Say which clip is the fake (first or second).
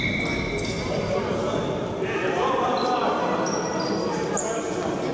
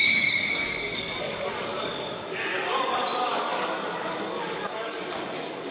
second